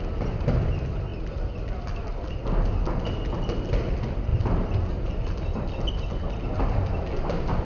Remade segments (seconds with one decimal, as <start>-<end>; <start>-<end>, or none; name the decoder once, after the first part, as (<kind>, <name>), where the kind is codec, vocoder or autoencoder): none